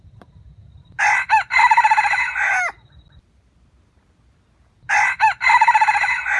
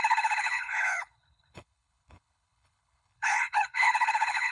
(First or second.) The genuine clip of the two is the first